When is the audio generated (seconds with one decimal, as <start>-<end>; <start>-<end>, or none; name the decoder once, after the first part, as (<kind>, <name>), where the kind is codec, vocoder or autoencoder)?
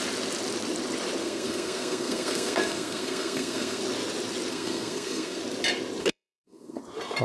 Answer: 1.2-3.8 (codec, SNAC); 4.5-5.4; 6.0-6.8